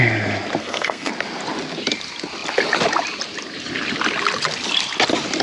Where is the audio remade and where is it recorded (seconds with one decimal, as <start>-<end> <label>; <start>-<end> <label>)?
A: 0.0-0.6 recorded; 0.6-1.1 remade; 1.1-5.4 recorded